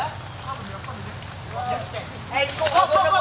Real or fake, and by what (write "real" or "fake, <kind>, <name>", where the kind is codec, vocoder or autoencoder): fake, vocoder, BigVGAN v2